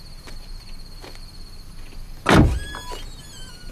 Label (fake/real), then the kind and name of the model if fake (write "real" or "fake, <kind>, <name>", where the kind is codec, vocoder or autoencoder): real